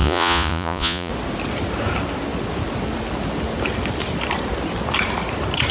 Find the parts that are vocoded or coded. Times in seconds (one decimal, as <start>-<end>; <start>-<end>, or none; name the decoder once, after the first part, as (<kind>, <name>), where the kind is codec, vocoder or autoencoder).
0.0-1.1 (vocoder, Vocos)